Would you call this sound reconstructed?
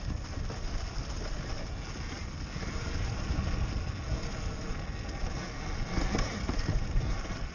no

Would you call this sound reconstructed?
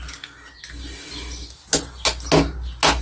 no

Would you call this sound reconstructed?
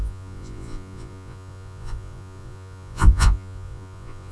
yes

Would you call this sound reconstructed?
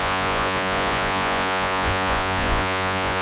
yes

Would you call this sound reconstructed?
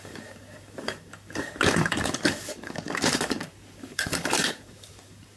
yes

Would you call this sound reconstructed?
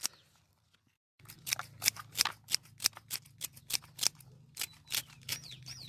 no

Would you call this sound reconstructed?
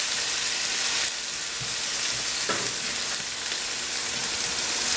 no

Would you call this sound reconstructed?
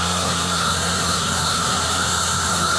yes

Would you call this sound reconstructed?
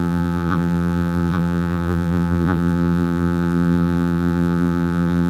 yes